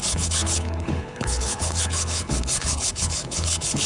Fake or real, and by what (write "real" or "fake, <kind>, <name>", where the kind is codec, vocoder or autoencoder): fake, codec, HILCodec